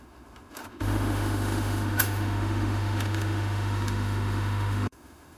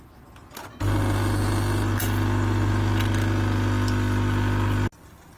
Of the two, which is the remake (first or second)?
first